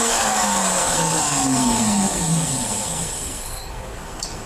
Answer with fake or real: fake